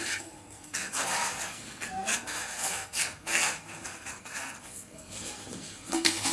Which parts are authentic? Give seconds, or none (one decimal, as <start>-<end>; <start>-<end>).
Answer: none